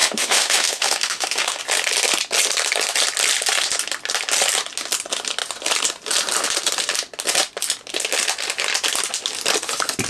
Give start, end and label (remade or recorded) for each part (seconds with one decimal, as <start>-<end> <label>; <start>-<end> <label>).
0.0-1.6 remade; 1.6-10.1 recorded